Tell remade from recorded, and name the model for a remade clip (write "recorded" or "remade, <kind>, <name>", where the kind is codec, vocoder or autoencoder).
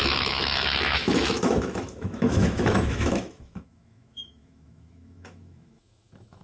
remade, autoencoder, DAC-VAE